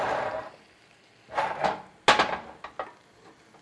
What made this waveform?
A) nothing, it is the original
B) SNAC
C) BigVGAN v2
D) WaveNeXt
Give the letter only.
A